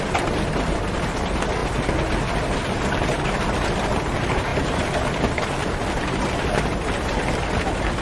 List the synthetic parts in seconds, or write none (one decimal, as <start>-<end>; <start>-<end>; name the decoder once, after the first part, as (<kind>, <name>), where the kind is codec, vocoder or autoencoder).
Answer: none